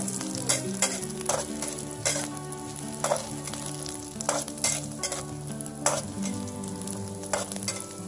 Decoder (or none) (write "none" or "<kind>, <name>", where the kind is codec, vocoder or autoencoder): none